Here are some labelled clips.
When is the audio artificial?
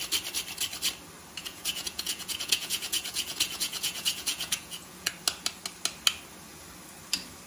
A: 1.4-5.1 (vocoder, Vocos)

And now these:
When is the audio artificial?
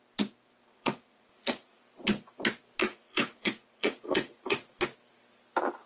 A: 0.7-1.8 (vocoder, Vocos); 2.8-4.8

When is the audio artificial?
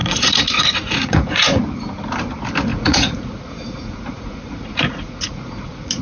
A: 0.0-1.6 (vocoder, Vocos); 2.7-6.0